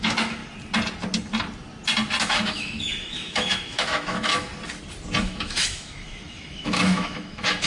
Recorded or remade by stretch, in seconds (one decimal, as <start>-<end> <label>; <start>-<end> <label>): 0.0-0.4 remade; 0.4-2.2 recorded; 2.2-4.5 remade; 4.5-5.2 recorded; 5.2-7.7 remade